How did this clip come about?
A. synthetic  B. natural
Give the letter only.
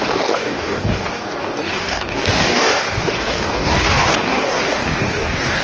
A